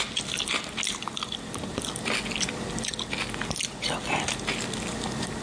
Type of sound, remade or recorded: recorded